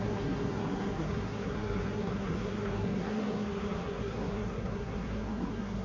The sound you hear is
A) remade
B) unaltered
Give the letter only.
A